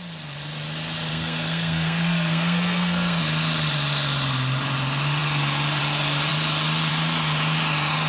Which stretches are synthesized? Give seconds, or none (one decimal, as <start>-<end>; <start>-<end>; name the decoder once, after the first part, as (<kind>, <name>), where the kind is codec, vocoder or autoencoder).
1.1-3.2 (codec, SNAC)